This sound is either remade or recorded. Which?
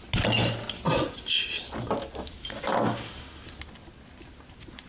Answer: recorded